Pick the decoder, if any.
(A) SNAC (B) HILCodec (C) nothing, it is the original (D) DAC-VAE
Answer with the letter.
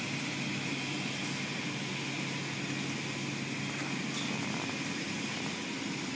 C